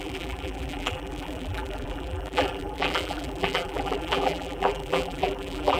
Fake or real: fake